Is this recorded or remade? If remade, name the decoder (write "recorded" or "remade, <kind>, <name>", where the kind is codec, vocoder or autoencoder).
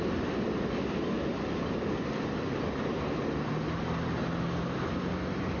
recorded